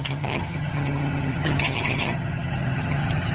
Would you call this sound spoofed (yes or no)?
yes